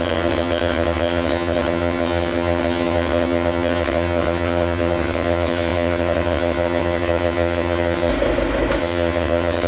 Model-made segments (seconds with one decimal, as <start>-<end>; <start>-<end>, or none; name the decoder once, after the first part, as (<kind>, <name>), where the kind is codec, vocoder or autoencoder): 0.0-8.1 (vocoder, HiFi-GAN); 8.8-9.7